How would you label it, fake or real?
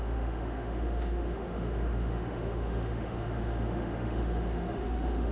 fake